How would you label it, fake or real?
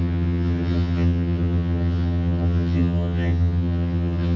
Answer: fake